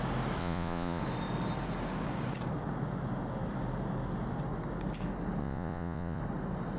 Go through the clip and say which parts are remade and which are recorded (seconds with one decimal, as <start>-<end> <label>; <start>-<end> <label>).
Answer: 0.0-0.4 recorded; 0.4-1.0 remade; 1.0-5.4 recorded; 5.4-6.2 remade; 6.2-6.8 recorded